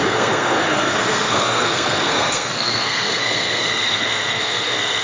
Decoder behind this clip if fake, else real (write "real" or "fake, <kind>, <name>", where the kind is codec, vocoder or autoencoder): fake, codec, SNAC